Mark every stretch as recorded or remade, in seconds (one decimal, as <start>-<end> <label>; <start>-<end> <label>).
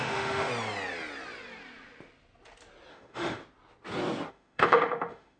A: 0.0-0.5 remade; 0.5-2.9 recorded; 2.9-3.4 remade; 3.4-4.3 recorded; 4.3-5.4 remade